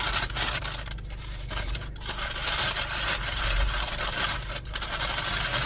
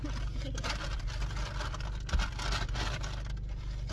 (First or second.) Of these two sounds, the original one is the second